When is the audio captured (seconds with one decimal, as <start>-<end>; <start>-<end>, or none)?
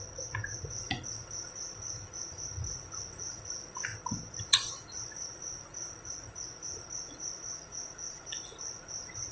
3.9-4.4